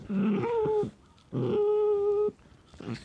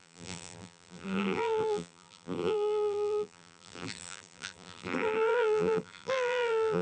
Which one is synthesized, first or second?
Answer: second